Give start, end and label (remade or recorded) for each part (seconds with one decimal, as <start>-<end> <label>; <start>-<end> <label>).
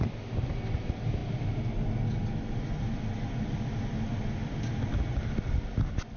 0.0-6.2 recorded